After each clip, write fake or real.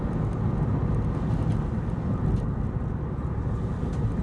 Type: real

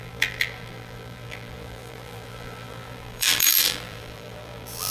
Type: fake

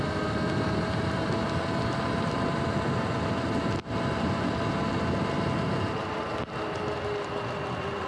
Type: real